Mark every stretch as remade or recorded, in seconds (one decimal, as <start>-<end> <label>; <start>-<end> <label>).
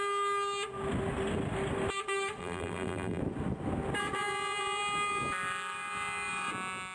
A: 0.0-2.4 recorded; 2.4-3.2 remade; 3.2-6.9 recorded